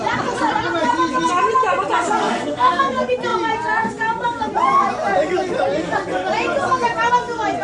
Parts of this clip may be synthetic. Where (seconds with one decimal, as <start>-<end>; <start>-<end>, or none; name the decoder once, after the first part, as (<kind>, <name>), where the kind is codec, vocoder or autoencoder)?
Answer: 2.2-2.8 (codec, SNAC)